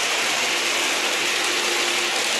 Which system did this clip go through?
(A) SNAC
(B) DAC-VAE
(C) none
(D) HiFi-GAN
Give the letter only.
C